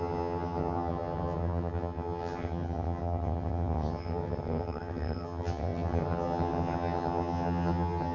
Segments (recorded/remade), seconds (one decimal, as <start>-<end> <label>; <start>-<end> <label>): 0.0-8.1 remade